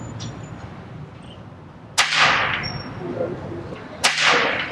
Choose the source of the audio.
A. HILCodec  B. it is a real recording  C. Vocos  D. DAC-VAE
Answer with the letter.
B